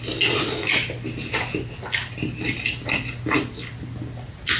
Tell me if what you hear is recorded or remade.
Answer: recorded